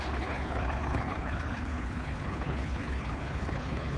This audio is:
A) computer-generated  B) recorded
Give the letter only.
A